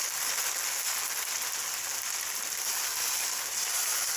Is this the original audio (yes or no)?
yes